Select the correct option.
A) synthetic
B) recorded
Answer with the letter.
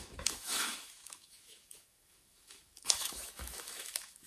A